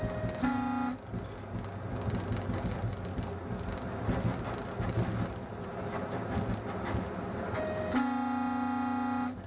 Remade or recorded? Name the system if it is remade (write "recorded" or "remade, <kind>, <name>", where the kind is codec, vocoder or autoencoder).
recorded